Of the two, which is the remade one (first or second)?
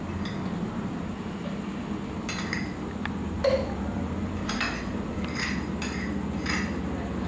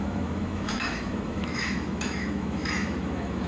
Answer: second